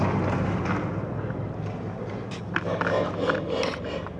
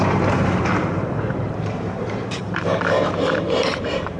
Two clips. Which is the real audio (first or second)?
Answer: first